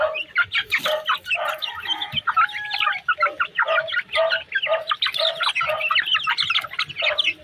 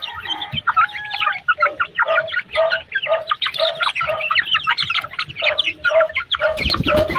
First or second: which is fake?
second